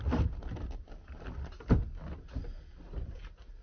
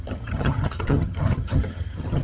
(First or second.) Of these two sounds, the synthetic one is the second